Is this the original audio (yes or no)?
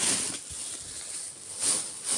yes